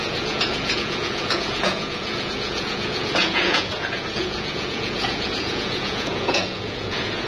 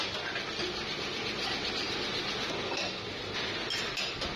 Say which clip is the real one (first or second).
second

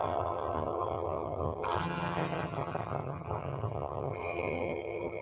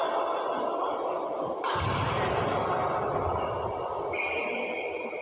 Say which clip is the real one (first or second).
second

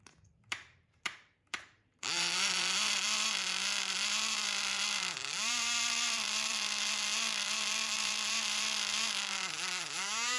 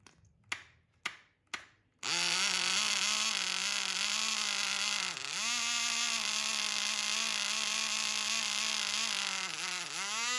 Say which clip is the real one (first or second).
second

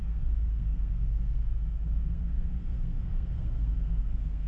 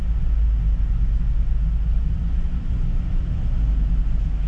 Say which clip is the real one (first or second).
second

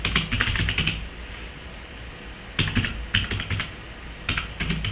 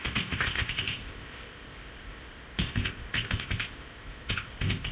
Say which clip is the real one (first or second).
first